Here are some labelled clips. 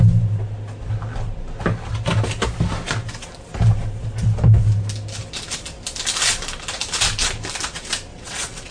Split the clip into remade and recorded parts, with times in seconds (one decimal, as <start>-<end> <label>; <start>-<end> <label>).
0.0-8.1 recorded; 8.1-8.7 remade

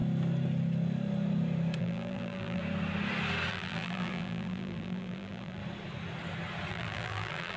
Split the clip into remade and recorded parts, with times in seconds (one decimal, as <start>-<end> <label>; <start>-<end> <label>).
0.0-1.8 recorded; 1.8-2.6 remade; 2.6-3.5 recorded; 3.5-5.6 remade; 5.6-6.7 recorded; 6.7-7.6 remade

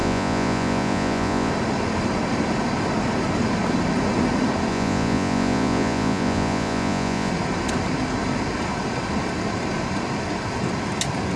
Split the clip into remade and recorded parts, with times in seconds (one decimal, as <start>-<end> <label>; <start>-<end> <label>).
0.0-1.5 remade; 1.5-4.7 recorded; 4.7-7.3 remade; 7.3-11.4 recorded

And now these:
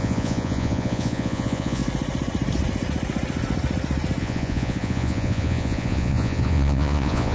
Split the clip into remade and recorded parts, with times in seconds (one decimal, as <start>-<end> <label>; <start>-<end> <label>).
0.0-1.8 remade; 1.8-4.2 recorded; 4.2-7.3 remade

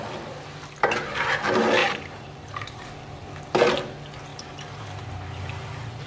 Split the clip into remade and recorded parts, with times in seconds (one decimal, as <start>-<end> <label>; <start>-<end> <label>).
0.0-1.8 recorded; 1.8-2.9 remade; 2.9-4.3 recorded; 4.3-5.1 remade; 5.1-6.1 recorded

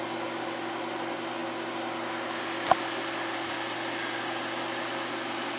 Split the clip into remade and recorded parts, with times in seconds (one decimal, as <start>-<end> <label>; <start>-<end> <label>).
0.0-5.6 recorded